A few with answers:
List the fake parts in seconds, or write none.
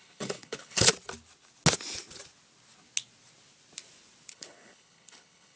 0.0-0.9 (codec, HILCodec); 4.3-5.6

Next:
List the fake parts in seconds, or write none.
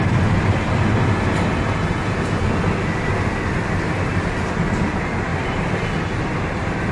none